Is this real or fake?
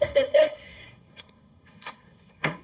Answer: fake